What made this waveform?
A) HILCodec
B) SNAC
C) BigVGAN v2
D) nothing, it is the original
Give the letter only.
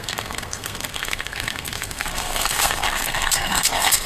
B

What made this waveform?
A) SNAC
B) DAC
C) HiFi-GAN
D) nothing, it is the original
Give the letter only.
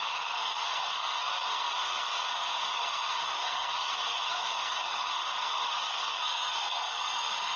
A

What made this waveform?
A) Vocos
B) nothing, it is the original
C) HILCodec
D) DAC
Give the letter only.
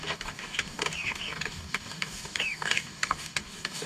D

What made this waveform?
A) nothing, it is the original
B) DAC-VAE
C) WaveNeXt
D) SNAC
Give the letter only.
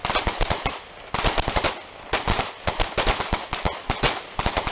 A